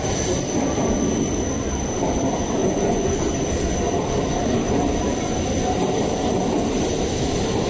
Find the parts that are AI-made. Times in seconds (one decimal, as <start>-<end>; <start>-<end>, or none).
2.6-3.1